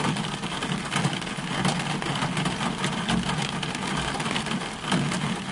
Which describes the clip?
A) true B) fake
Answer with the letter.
A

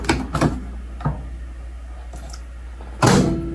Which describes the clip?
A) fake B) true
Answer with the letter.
B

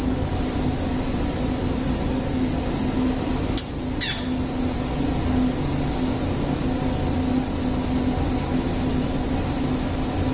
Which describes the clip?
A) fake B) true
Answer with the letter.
B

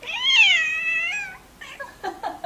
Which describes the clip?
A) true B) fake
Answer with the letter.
A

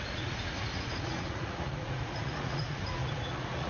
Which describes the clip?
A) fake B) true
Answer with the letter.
A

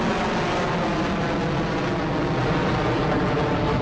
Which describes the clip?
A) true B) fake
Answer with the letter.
A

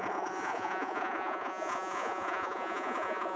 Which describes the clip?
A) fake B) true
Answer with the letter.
A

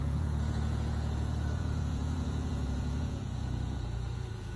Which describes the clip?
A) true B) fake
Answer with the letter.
B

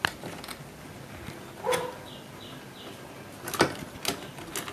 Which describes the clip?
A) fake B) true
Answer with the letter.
B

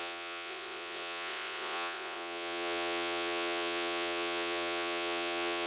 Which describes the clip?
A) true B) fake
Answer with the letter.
B